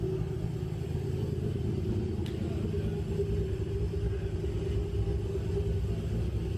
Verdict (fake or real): real